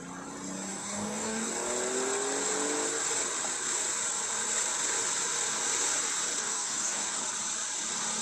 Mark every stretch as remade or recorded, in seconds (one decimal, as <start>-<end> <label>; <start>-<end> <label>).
0.0-0.7 recorded; 0.7-1.5 remade; 1.5-6.4 recorded; 6.4-7.2 remade; 7.2-8.2 recorded